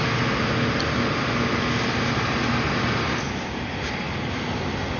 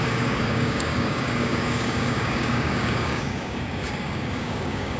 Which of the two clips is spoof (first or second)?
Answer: second